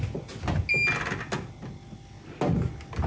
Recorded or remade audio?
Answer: recorded